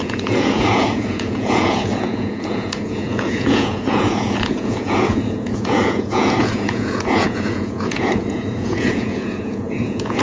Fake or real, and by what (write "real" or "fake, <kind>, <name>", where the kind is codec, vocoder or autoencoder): fake, vocoder, Vocos